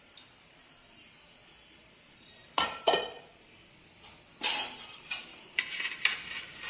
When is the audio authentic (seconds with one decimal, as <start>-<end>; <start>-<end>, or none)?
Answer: 3.6-4.8